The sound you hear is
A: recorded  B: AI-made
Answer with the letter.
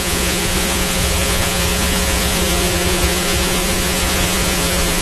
B